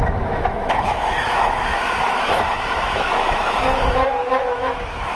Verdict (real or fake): fake